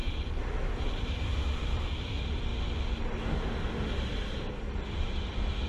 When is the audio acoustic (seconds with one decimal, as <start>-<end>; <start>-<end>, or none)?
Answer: 0.0-1.6; 2.5-4.5